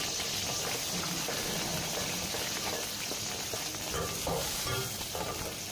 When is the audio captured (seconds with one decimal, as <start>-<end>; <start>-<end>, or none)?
0.0-5.7